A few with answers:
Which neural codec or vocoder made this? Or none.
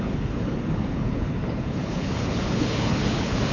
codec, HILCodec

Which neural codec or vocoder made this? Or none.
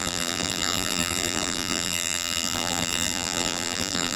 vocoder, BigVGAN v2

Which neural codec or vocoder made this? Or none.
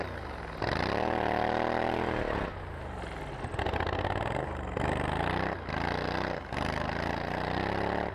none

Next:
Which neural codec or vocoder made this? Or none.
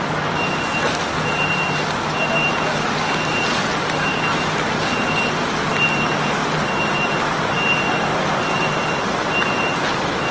vocoder, BigVGAN v2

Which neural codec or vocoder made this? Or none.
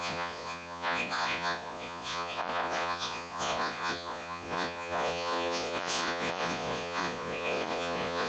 vocoder, Vocos